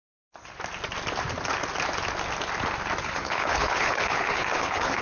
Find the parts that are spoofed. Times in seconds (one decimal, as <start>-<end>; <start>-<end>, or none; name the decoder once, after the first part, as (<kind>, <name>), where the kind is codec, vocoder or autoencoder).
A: 3.0-5.0 (codec, HILCodec)